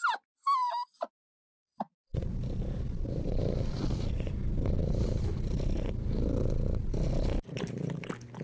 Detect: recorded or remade recorded